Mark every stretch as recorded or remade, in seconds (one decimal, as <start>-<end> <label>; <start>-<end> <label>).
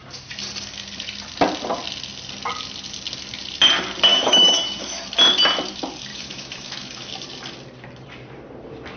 0.0-4.1 recorded; 4.1-5.0 remade; 5.0-6.1 recorded; 6.1-7.1 remade; 7.1-9.0 recorded